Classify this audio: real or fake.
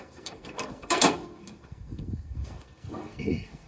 fake